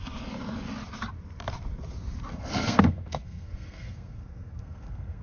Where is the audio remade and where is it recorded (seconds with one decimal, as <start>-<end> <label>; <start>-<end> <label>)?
0.0-2.3 recorded; 2.3-5.2 remade